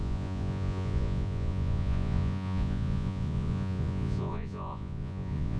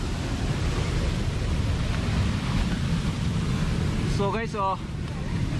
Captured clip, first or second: second